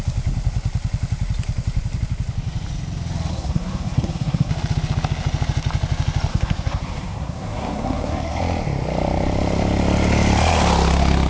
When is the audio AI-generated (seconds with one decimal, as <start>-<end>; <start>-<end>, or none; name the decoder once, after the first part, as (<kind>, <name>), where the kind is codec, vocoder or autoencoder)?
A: 3.3-4.5 (codec, SNAC); 6.3-8.4